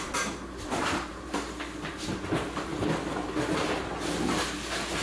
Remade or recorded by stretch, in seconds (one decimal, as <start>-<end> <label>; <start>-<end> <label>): 0.0-5.0 recorded